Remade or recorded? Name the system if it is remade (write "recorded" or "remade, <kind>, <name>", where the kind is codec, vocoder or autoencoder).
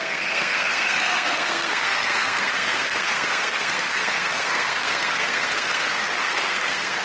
remade, codec, SNAC